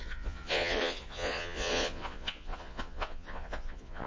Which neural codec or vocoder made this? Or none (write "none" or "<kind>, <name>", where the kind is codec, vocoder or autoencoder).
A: vocoder, Vocos